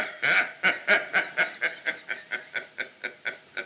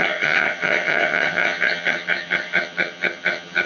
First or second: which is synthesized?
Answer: second